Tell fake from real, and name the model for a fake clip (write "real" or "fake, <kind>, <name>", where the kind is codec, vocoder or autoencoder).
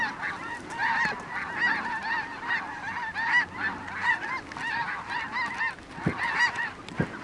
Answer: real